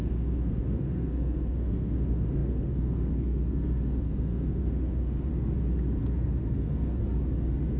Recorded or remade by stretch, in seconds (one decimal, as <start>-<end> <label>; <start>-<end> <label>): 0.0-5.3 remade; 5.3-6.0 recorded; 6.0-7.0 remade; 7.0-7.8 recorded